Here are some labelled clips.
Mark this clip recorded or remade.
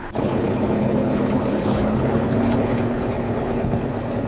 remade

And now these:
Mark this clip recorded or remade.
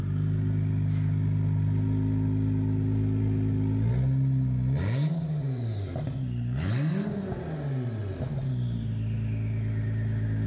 recorded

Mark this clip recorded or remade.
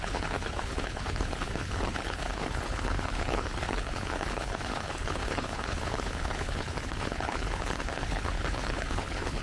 remade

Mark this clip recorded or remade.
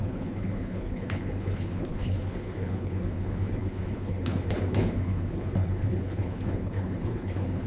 remade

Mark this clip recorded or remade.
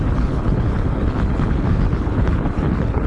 remade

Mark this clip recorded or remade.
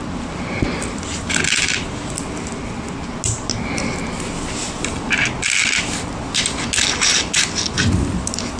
recorded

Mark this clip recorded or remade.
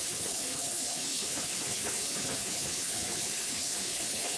remade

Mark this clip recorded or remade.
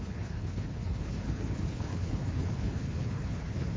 remade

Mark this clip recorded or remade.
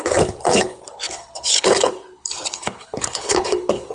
remade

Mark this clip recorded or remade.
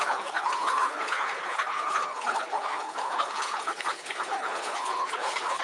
remade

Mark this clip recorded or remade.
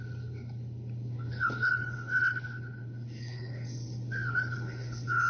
remade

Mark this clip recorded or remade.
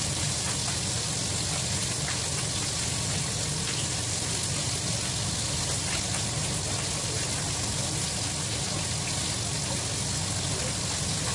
recorded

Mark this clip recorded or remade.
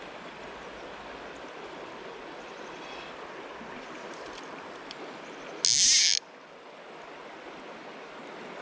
recorded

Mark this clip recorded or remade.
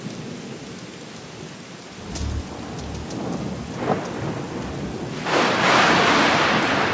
recorded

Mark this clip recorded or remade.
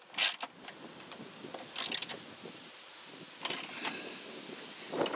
recorded